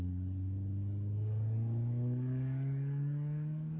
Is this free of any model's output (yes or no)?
no